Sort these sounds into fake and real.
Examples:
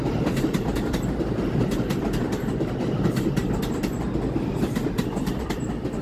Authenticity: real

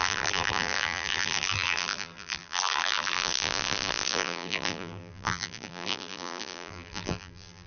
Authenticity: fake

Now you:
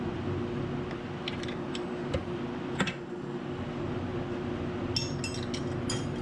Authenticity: real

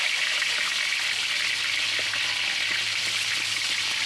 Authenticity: real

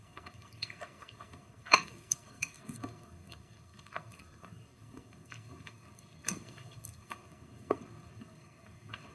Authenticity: fake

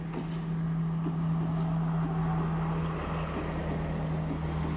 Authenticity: real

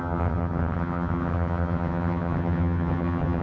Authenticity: fake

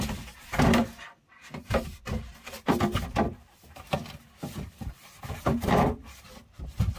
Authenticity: fake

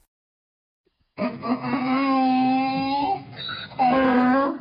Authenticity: fake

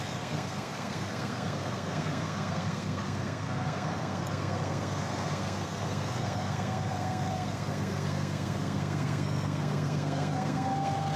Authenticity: fake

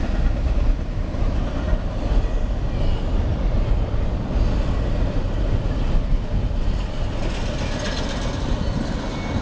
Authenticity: real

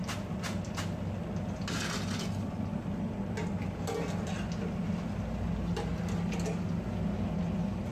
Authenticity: real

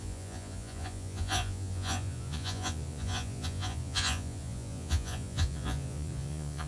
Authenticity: fake